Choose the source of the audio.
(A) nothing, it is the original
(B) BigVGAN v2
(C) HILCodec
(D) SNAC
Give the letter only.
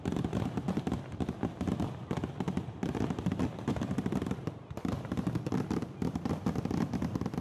B